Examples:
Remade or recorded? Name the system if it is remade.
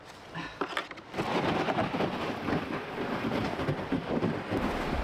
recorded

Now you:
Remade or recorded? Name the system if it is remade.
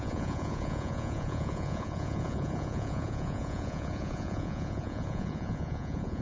remade, vocoder, Vocos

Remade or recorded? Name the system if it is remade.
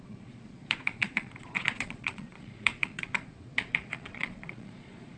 remade, vocoder, Vocos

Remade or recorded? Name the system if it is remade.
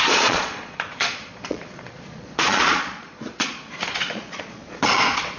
remade, vocoder, Vocos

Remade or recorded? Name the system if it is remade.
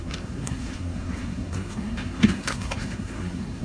remade, codec, SNAC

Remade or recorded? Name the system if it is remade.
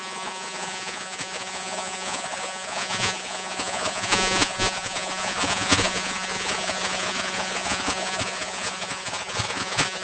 remade, vocoder, Vocos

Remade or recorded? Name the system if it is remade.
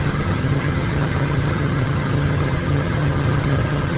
remade, vocoder, HiFi-GAN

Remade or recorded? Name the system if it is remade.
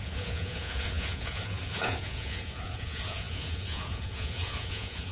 remade, vocoder, Vocos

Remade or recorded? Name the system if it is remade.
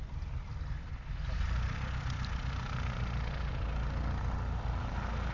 recorded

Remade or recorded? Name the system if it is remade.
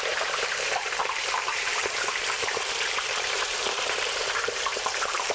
remade, vocoder, BigVGAN v2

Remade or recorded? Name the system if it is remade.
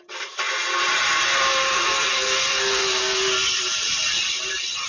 remade, vocoder, BigVGAN v2